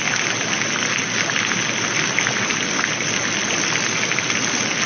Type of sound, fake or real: real